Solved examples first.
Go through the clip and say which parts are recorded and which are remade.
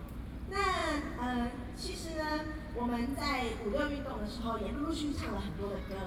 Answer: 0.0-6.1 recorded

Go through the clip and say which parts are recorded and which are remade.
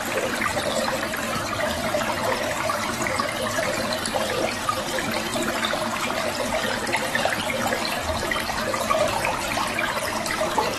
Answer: 0.0-10.8 recorded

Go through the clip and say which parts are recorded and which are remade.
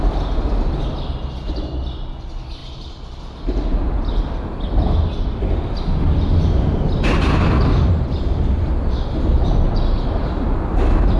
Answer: 0.0-11.2 recorded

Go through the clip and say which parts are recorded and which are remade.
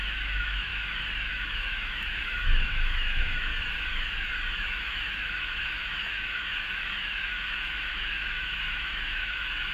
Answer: 0.0-0.7 remade; 0.7-1.3 recorded; 1.3-3.5 remade; 3.5-4.6 recorded; 4.6-9.7 remade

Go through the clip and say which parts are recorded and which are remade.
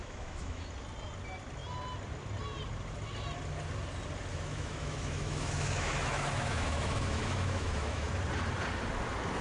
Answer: 0.0-0.7 remade; 0.7-4.3 recorded; 4.3-8.1 remade; 8.1-9.4 recorded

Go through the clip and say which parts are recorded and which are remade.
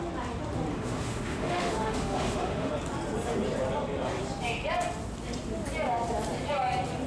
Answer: 0.0-0.7 recorded; 0.7-2.7 remade; 2.7-7.1 recorded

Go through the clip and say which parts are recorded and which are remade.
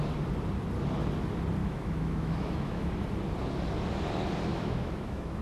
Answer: 0.0-1.6 recorded; 1.6-2.9 remade; 2.9-4.5 recorded; 4.5-5.4 remade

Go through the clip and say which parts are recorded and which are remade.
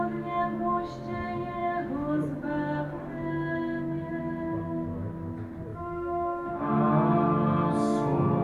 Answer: 0.0-5.7 recorded; 5.7-6.5 remade; 6.5-8.4 recorded